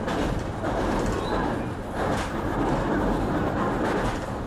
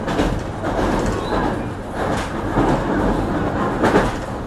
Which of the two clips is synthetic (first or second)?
first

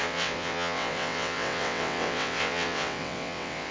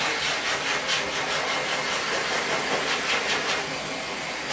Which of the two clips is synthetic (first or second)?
first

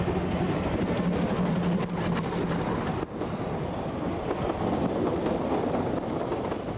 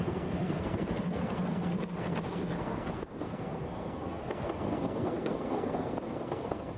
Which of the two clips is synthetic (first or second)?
second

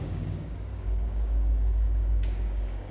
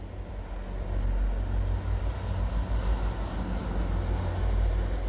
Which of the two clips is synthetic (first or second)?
first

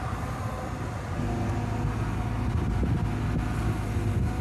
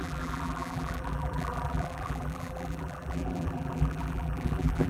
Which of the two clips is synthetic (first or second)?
second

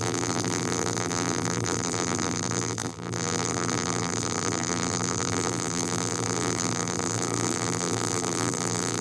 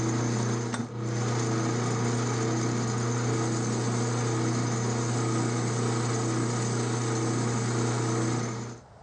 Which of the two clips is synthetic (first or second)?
first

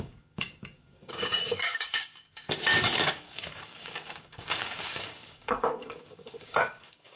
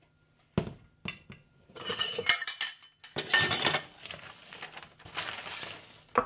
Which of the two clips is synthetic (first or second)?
first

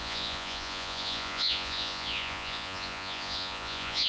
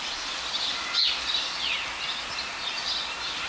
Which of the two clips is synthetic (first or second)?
first